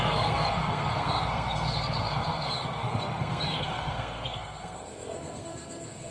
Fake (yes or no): yes